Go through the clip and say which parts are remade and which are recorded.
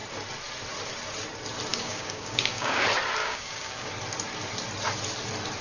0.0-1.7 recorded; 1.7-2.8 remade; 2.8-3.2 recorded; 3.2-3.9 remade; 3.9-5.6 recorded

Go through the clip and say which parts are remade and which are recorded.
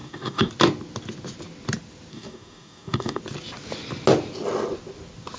0.0-0.5 remade; 0.5-2.1 recorded; 2.1-3.2 remade; 3.2-5.4 recorded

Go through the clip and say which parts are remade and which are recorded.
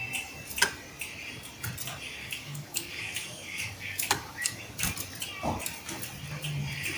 0.0-2.2 recorded; 2.2-4.7 remade; 4.7-7.0 recorded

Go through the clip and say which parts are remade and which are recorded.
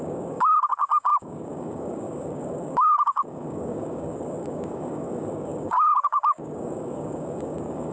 0.0-7.9 remade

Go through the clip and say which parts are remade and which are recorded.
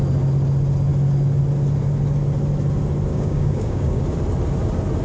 0.0-3.1 recorded; 3.1-4.0 remade; 4.0-5.0 recorded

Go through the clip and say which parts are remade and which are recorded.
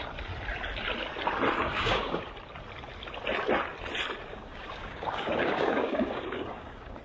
0.0-1.6 recorded; 1.6-2.2 remade; 2.2-4.3 recorded; 4.3-7.0 remade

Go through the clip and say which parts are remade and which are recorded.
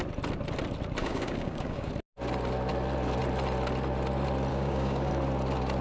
0.0-1.0 recorded; 1.0-1.9 remade; 1.9-4.5 recorded; 4.5-5.1 remade; 5.1-5.8 recorded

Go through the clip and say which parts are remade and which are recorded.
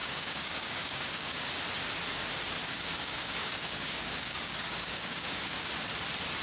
0.0-1.5 remade; 1.5-2.6 recorded; 2.6-5.7 remade; 5.7-6.4 recorded